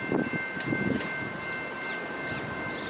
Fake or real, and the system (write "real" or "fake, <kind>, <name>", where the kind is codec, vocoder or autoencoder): real